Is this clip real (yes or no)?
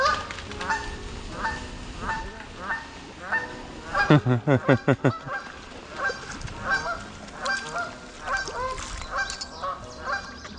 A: yes